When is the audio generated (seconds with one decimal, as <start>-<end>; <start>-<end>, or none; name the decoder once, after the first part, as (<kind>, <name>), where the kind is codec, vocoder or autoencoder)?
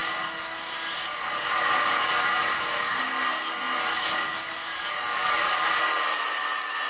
0.0-3.0 (codec, DAC); 3.8-5.8